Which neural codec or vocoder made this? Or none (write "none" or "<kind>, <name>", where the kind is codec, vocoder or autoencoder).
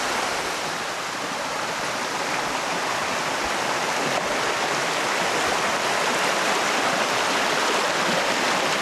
none